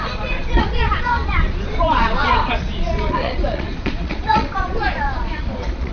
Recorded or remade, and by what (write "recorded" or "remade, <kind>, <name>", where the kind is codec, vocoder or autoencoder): remade, vocoder, Vocos